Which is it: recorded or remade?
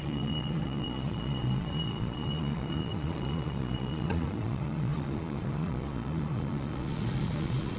remade